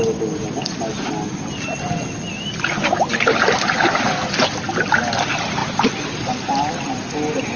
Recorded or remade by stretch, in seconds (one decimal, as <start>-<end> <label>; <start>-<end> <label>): 0.0-7.6 recorded